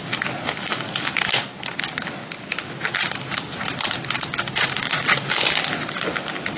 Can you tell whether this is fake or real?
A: real